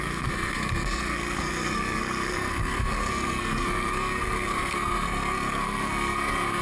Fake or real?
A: fake